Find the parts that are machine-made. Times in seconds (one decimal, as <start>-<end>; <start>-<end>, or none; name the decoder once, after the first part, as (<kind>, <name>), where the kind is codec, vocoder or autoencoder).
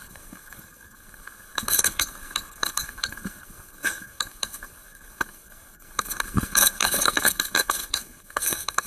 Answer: 0.0-8.9 (codec, SNAC)